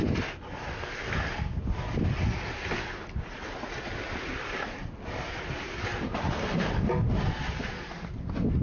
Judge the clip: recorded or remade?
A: recorded